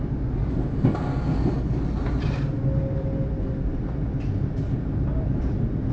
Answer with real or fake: real